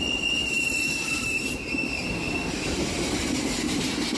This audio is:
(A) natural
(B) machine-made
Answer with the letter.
B